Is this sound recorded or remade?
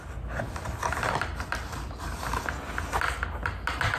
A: recorded